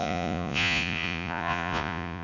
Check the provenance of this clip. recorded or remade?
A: remade